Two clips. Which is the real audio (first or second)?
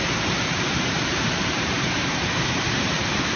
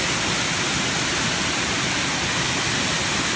second